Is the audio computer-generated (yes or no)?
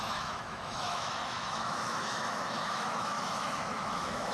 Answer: yes